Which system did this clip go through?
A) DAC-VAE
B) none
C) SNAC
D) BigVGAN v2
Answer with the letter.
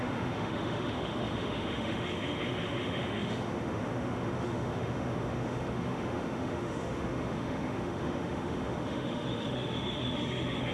A